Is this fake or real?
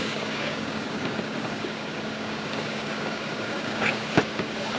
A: fake